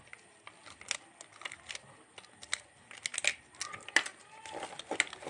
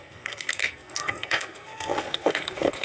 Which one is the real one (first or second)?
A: first